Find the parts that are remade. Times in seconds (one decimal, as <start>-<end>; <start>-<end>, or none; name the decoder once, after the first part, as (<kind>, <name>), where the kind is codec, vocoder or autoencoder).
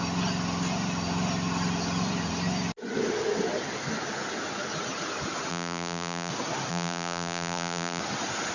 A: 5.5-6.3 (vocoder, BigVGAN v2); 6.7-8.0